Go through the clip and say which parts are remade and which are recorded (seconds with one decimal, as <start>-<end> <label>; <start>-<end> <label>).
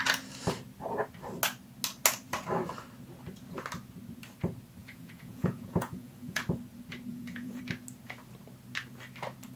0.0-4.8 recorded; 4.8-6.4 remade; 6.4-7.1 recorded; 7.1-7.6 remade; 7.6-9.6 recorded